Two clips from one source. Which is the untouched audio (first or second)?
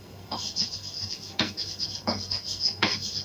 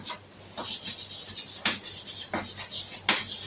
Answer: second